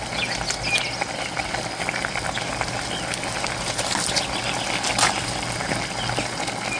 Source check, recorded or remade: recorded